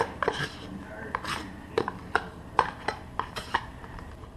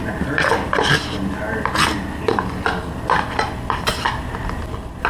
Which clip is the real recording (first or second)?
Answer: second